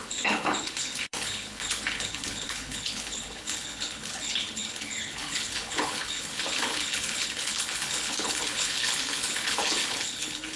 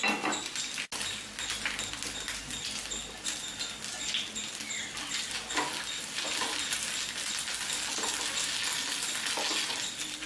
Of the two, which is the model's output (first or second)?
first